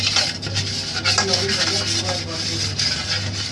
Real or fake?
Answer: real